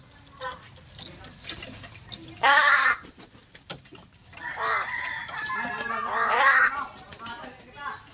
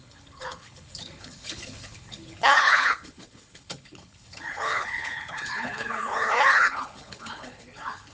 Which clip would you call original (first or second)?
first